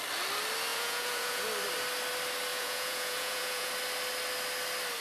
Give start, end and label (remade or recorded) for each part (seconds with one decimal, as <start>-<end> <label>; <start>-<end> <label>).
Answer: 0.0-0.7 recorded; 0.7-1.4 remade; 1.4-2.5 recorded; 2.5-3.7 remade; 3.7-5.0 recorded